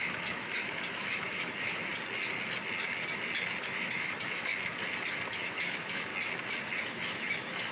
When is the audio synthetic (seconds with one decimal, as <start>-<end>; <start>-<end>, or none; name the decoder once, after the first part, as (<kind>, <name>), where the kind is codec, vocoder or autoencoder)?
0.0-1.9 (autoencoder, DAC-VAE); 3.6-4.5; 5.3-6.1; 6.8-7.7